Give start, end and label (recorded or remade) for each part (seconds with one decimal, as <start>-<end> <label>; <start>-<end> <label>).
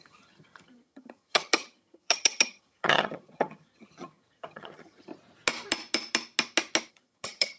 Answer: 0.0-5.1 remade; 5.1-6.9 recorded; 6.9-7.6 remade